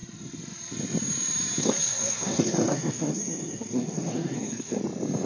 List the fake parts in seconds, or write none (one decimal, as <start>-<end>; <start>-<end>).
1.6-4.8